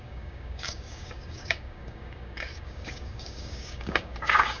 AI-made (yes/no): yes